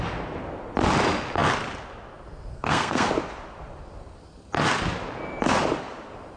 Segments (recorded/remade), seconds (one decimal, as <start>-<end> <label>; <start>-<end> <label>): 0.0-2.5 recorded; 2.5-3.1 remade; 3.1-6.4 recorded